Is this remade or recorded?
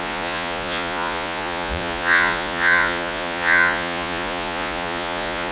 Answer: remade